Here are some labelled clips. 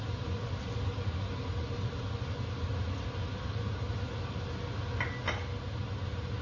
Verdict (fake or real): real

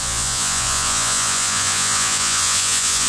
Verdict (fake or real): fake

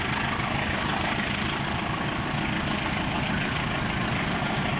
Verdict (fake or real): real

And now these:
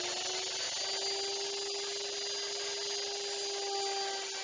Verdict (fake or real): real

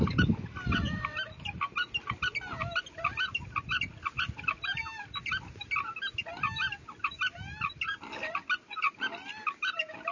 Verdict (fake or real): real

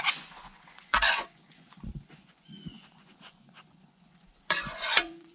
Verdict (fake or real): fake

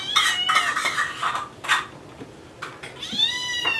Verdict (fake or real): real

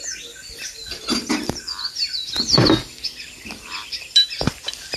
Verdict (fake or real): real